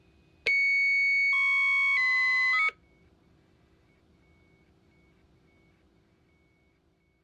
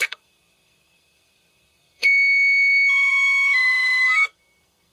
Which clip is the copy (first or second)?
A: second